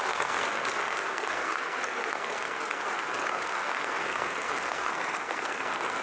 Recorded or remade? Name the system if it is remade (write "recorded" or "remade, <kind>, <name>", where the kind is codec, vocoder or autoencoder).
remade, codec, SNAC